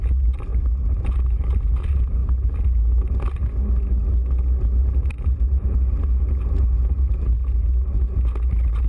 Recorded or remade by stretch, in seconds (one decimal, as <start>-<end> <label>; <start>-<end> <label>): 0.0-0.5 remade; 0.5-1.0 recorded; 1.0-3.4 remade; 3.4-4.8 recorded; 4.8-7.4 remade; 7.4-8.9 recorded